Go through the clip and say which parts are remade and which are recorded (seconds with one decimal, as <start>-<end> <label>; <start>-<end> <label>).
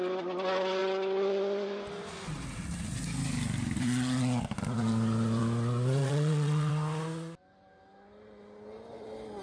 0.0-6.0 recorded; 6.0-6.7 remade; 6.7-9.4 recorded